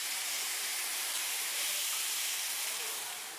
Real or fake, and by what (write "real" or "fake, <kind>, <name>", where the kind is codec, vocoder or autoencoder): fake, vocoder, BigVGAN v2